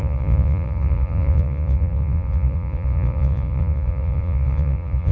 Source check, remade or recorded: remade